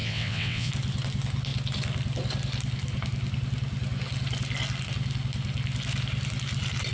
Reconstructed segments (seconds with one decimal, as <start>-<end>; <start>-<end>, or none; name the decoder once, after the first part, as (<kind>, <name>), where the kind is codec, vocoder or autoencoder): 0.0-0.7 (vocoder, WaveNeXt)